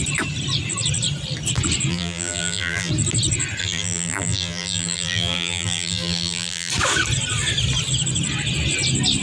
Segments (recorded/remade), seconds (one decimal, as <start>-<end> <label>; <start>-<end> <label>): 0.0-1.9 recorded; 1.9-2.9 remade; 2.9-3.6 recorded; 3.6-6.7 remade; 6.7-9.2 recorded